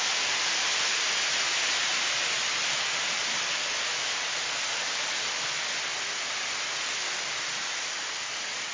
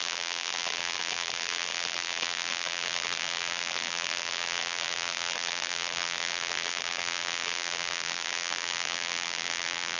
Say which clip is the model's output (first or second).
second